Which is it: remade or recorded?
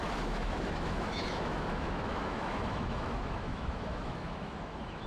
remade